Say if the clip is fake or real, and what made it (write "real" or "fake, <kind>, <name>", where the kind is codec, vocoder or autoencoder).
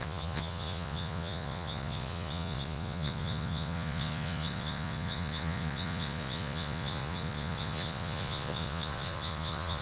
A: fake, vocoder, Vocos